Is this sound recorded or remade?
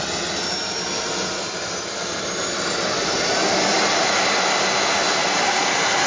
recorded